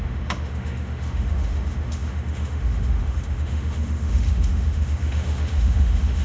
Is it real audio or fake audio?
fake